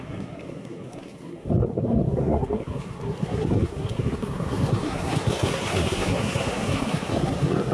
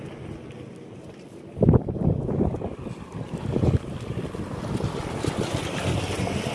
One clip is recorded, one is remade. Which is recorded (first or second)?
second